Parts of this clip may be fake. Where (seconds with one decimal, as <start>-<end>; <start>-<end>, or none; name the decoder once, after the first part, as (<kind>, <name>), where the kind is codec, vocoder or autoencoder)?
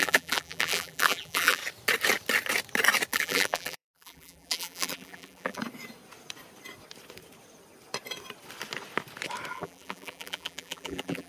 0.0-1.6 (vocoder, BigVGAN v2); 3.1-5.6; 9.5-11.3